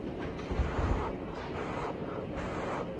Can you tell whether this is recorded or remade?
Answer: remade